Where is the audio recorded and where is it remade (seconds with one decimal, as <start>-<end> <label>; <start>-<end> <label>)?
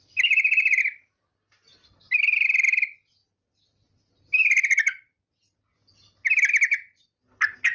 0.0-7.7 recorded